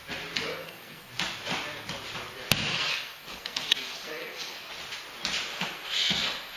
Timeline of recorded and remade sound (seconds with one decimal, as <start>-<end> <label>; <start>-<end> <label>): 0.0-0.5 recorded; 0.5-1.1 remade; 1.1-2.7 recorded; 2.7-4.7 remade; 4.7-5.5 recorded; 5.5-6.6 remade